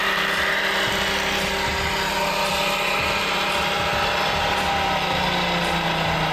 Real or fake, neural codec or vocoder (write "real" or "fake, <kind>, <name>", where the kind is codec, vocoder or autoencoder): real